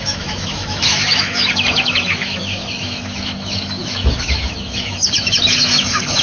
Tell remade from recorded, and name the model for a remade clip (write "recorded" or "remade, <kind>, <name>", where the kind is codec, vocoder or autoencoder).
remade, autoencoder, DAC-VAE